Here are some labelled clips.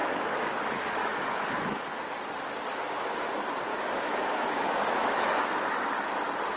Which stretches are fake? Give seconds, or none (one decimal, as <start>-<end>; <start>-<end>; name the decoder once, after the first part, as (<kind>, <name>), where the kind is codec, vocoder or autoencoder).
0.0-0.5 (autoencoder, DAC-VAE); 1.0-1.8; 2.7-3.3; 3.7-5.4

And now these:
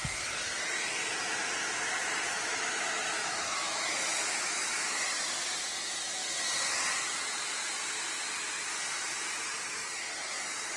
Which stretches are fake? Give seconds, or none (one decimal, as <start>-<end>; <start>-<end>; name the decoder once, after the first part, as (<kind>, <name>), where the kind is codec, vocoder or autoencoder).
2.0-5.0 (autoencoder, DAC-VAE)

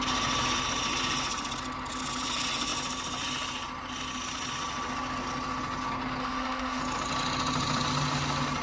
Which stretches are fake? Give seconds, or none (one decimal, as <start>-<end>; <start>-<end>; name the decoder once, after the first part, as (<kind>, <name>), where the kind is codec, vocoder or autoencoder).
6.2-6.8 (autoencoder, DAC-VAE)

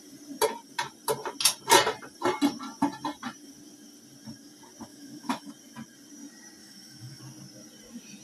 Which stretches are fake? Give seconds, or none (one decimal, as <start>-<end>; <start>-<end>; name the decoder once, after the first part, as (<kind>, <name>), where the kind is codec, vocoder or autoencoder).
4.9-5.5 (autoencoder, DAC-VAE); 6.6-7.2